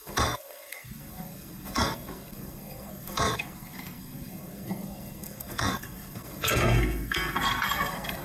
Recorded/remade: remade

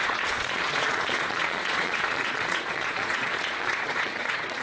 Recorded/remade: remade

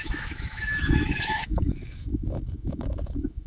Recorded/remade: remade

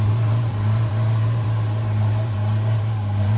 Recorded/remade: remade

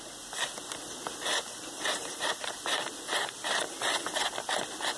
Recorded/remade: recorded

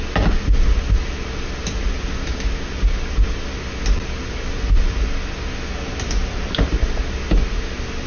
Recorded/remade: recorded